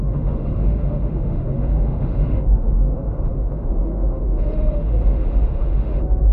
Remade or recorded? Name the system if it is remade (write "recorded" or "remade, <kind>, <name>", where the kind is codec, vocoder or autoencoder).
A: remade, autoencoder, DAC-VAE